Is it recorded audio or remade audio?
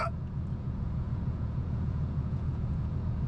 remade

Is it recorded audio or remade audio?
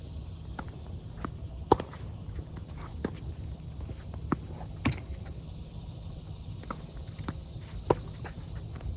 recorded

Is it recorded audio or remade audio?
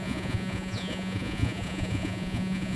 remade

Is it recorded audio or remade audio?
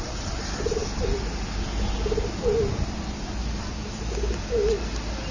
recorded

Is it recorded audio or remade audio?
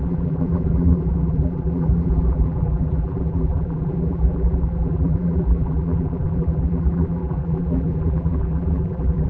remade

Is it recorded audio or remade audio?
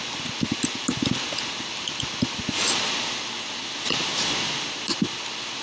recorded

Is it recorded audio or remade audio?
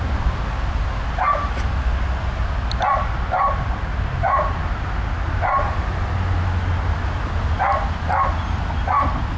recorded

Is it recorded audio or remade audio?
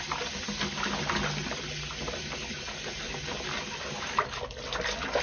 recorded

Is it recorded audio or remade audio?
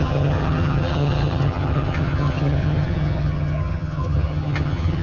remade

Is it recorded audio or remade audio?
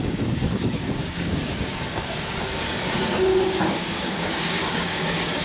remade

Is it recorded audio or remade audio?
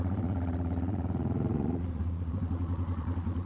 remade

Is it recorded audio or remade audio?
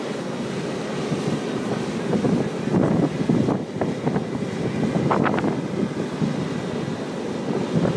recorded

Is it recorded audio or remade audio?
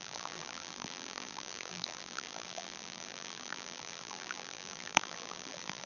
remade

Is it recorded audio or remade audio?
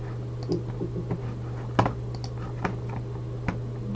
recorded